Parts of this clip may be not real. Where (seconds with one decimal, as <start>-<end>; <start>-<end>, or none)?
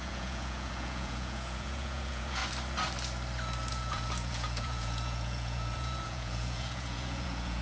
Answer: 0.0-2.4; 3.7-7.6